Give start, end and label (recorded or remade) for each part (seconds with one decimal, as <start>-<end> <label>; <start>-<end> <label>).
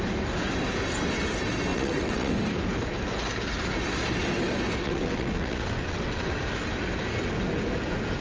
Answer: 0.0-1.7 recorded; 1.7-2.3 remade; 2.3-4.8 recorded; 4.8-6.4 remade; 6.4-8.2 recorded